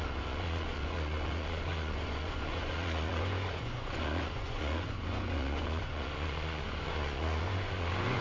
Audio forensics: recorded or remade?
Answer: remade